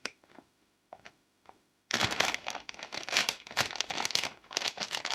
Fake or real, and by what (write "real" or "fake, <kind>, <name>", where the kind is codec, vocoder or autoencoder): fake, autoencoder, DAC-VAE